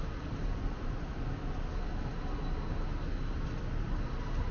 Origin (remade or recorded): recorded